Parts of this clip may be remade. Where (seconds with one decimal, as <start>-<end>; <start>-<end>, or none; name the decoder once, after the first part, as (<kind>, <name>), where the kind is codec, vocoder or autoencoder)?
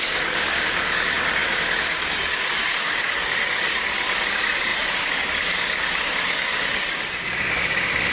0.0-8.1 (codec, DAC)